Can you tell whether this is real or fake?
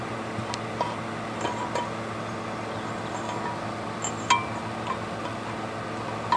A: real